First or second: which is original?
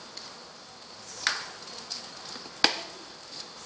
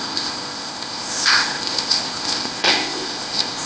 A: first